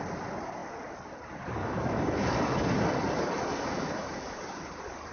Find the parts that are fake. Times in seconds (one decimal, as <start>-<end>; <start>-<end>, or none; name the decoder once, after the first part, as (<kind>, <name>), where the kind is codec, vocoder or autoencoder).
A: 1.6-2.8 (autoencoder, DAC-VAE); 3.5-4.4